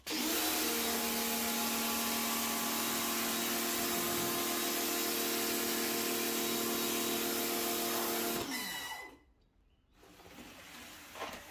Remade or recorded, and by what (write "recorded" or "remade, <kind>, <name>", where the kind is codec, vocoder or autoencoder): recorded